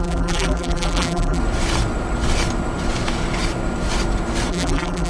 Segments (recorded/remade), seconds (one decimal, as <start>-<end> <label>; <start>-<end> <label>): 0.0-1.4 remade; 1.4-4.5 recorded; 4.5-5.1 remade